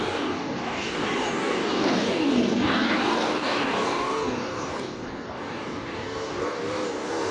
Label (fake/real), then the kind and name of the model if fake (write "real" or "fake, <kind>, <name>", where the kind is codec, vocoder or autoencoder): fake, codec, DAC